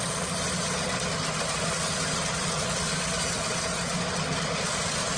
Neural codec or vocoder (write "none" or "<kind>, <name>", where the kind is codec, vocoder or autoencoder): none